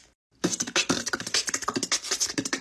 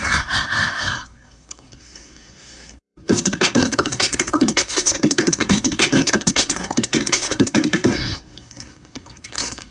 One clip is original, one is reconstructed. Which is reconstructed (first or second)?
second